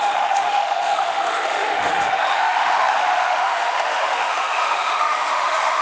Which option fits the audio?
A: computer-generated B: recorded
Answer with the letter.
A